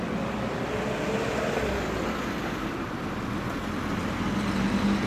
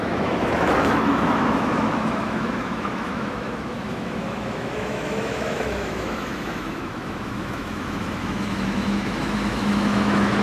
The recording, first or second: first